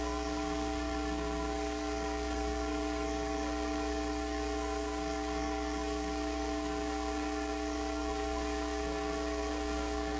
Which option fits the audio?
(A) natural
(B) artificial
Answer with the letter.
B